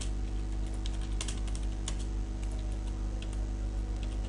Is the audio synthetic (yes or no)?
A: no